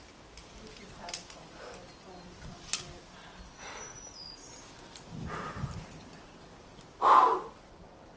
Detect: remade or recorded recorded